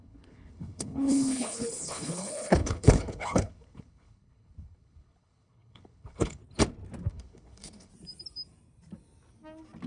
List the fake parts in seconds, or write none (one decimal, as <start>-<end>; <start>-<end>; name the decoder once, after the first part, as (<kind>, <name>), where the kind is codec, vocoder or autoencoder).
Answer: 0.0-6.4 (codec, HILCodec); 7.1-7.9